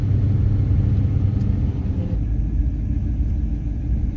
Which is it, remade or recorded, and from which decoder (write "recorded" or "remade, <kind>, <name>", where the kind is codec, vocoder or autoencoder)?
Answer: recorded